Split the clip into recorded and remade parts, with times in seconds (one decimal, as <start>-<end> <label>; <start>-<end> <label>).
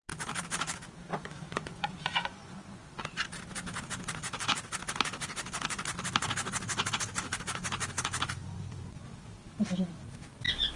0.0-1.1 recorded; 1.1-3.0 remade; 3.0-8.4 recorded; 8.4-9.4 remade; 9.4-10.8 recorded